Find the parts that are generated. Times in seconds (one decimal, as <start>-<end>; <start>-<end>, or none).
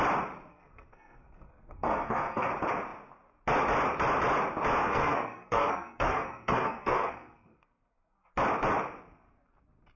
0.5-2.5; 4.8-8.3